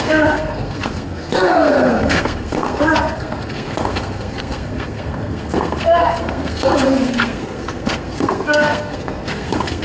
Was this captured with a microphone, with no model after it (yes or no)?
no